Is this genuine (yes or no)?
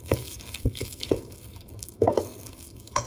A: no